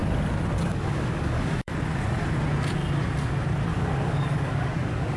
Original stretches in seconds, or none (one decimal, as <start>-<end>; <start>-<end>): 0.0-0.7; 1.7-3.7